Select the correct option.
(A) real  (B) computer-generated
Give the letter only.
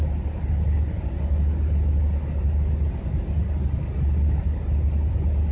A